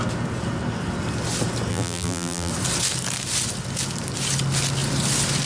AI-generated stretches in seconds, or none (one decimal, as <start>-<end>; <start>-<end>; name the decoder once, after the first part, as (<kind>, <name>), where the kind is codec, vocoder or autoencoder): 1.7-2.5 (vocoder, BigVGAN v2)

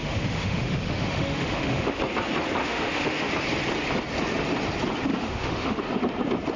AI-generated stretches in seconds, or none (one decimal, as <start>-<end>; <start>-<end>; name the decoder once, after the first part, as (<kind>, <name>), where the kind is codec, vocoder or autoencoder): 0.0-2.0 (autoencoder, DAC-VAE); 2.6-3.3; 5.1-5.8

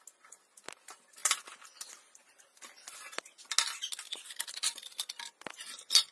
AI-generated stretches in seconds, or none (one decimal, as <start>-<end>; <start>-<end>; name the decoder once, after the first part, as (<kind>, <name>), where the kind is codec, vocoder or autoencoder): none

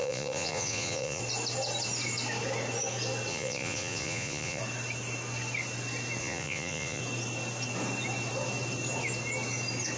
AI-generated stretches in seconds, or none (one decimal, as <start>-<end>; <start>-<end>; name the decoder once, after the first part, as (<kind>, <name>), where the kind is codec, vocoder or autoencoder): 0.0-1.2 (vocoder, Vocos); 3.3-4.6; 6.2-7.0

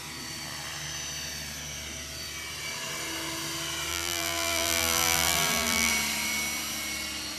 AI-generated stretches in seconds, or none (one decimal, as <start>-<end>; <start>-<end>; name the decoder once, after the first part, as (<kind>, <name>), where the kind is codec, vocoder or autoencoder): 3.9-5.9 (vocoder, BigVGAN v2)

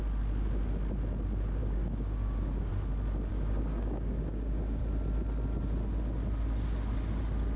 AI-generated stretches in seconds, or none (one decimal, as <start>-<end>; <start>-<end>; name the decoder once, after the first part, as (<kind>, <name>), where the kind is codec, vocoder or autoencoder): 1.6-2.7 (codec, DAC); 3.3-4.8